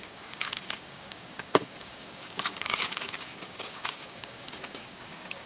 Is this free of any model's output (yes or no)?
no